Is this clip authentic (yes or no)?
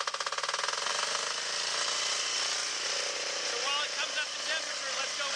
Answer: yes